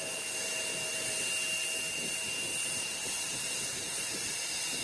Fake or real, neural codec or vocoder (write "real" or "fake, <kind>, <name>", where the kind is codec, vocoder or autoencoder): real